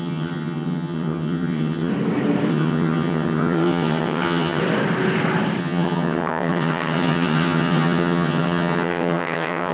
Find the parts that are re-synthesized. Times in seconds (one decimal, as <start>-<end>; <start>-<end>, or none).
0.0-1.9; 2.5-4.6; 5.6-9.7